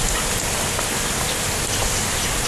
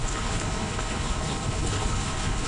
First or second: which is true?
first